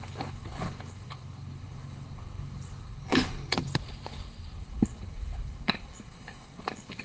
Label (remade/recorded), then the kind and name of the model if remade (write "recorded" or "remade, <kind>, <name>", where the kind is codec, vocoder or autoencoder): remade, codec, HILCodec